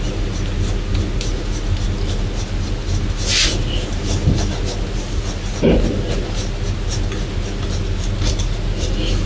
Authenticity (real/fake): real